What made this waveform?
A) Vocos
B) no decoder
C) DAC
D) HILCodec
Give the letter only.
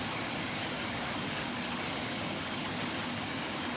C